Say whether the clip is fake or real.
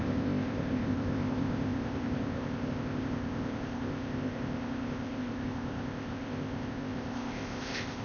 fake